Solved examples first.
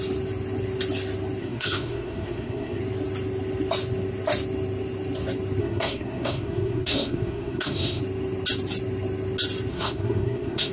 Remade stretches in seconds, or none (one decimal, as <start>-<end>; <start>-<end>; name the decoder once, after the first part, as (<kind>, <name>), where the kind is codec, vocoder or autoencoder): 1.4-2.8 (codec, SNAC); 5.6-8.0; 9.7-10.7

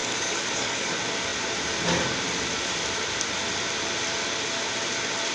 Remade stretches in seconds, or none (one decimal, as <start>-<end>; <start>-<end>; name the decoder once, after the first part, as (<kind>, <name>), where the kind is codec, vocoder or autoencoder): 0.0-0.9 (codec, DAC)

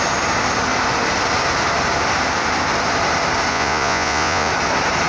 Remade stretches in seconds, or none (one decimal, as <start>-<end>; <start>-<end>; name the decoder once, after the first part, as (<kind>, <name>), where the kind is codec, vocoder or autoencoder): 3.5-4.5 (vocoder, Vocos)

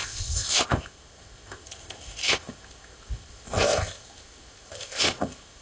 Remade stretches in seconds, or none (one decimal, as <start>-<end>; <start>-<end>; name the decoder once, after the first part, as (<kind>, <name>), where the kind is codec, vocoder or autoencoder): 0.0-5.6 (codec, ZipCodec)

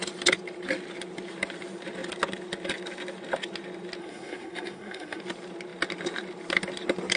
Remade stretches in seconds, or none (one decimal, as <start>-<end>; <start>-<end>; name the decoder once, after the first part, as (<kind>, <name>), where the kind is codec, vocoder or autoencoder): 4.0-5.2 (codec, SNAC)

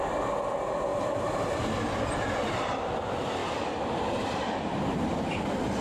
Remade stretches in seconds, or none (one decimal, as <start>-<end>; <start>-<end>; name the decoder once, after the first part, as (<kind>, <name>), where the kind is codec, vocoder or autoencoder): 0.9-1.6 (vocoder, BigVGAN v2); 3.4-4.8